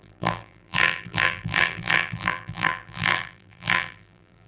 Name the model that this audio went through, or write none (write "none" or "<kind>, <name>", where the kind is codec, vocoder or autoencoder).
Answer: vocoder, BigVGAN v2